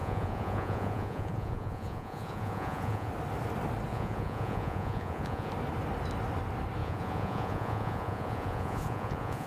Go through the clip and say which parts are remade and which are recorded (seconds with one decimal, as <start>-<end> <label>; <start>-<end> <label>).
0.0-3.1 remade; 3.1-3.9 recorded; 3.9-5.5 remade; 5.5-6.8 recorded; 6.8-9.5 remade

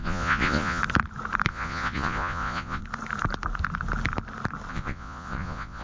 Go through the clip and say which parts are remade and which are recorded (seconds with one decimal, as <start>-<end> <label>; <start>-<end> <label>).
0.0-0.8 remade; 0.8-1.5 recorded; 1.5-2.8 remade; 2.8-4.7 recorded; 4.7-5.8 remade

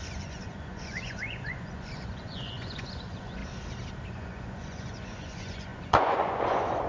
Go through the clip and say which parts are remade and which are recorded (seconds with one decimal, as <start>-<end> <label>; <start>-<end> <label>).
0.0-3.4 remade; 3.4-4.1 recorded; 4.1-6.9 remade

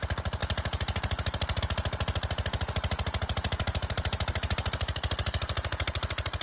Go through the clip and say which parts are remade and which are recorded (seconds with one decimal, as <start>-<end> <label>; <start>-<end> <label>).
0.0-6.4 recorded

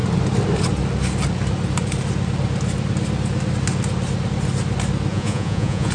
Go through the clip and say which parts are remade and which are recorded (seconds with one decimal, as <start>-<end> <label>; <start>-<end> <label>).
0.0-5.1 recorded; 5.1-5.9 remade

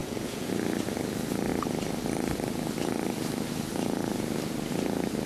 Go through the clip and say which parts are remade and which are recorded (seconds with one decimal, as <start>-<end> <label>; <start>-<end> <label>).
0.0-0.5 remade; 0.5-5.3 recorded

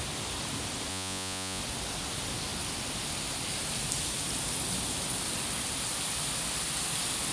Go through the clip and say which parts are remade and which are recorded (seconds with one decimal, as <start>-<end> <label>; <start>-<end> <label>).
0.0-0.9 recorded; 0.9-1.6 remade; 1.6-7.3 recorded